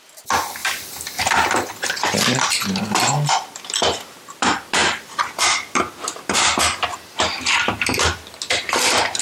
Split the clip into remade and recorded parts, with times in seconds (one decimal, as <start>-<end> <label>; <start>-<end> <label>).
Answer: 0.0-9.2 remade